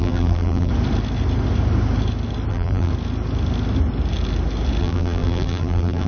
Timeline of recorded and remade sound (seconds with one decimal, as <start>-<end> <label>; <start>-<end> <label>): 0.0-0.7 remade; 0.7-2.5 recorded; 2.5-2.9 remade; 2.9-4.8 recorded; 4.8-6.1 remade